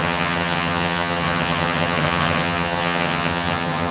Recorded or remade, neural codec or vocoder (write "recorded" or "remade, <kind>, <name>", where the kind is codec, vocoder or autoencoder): remade, vocoder, HiFi-GAN